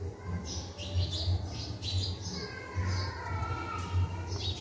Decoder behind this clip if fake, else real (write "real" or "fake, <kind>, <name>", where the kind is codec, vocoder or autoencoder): real